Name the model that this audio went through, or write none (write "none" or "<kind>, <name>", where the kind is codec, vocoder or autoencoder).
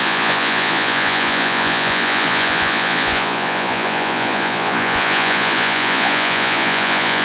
vocoder, Vocos